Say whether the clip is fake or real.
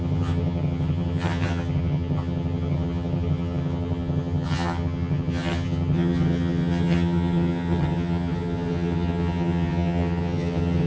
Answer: fake